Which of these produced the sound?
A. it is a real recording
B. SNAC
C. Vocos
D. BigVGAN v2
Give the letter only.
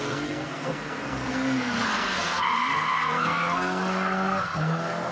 B